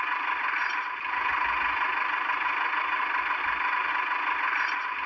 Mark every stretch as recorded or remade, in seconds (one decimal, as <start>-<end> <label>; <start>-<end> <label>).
0.0-5.1 recorded

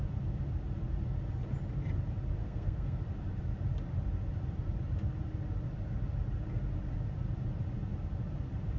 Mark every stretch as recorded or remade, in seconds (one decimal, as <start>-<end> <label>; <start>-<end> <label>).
0.0-2.4 recorded; 2.4-3.0 remade; 3.0-8.8 recorded

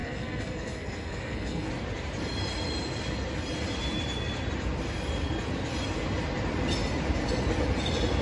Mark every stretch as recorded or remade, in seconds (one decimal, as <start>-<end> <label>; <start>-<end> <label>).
0.0-1.7 remade; 1.7-8.2 recorded

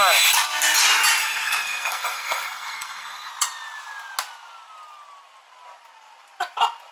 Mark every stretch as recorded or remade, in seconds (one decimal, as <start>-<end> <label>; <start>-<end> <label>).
0.0-1.2 recorded; 1.2-3.3 remade; 3.3-6.9 recorded

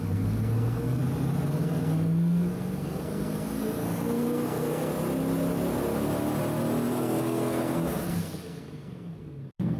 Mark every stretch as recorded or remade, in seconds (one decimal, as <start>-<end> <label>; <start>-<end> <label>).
0.0-1.0 remade; 1.0-1.5 recorded; 1.5-4.9 remade; 4.9-6.9 recorded; 6.9-9.8 remade

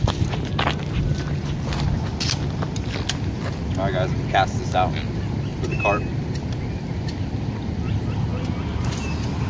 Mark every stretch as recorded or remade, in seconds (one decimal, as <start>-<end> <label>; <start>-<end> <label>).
0.0-9.5 recorded

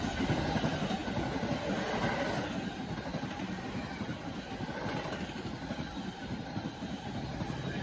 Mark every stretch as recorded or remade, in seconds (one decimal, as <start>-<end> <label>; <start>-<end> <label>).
0.0-7.8 recorded